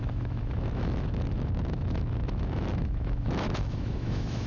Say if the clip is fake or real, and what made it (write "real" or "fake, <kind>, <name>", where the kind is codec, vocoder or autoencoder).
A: fake, autoencoder, DAC-VAE